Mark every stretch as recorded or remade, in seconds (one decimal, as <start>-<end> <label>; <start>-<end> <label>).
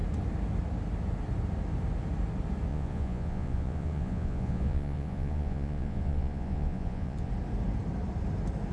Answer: 0.0-2.7 recorded; 2.7-7.3 remade; 7.3-8.7 recorded